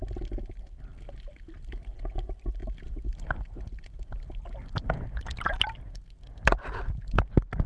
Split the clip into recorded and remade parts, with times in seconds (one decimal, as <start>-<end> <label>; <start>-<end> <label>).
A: 0.0-7.7 recorded